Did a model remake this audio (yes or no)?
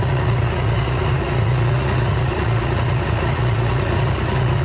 yes